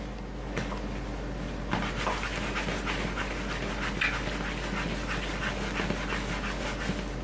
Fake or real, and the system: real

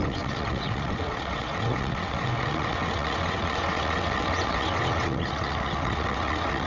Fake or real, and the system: fake, vocoder, WaveNeXt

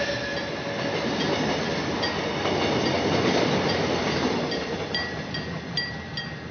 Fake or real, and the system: real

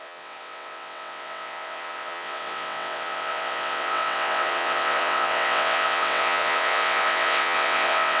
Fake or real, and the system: fake, vocoder, WaveNeXt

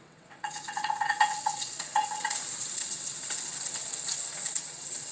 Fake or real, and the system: fake, vocoder, WaveNeXt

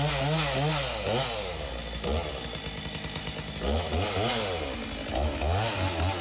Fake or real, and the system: real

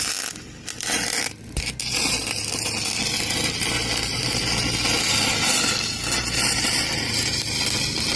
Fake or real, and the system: real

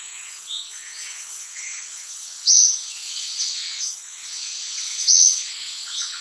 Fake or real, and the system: fake, vocoder, WaveNeXt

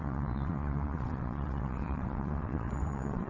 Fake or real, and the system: fake, vocoder, WaveNeXt